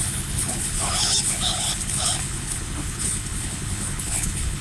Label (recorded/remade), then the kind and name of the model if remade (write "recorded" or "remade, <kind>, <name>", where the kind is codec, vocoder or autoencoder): remade, codec, HILCodec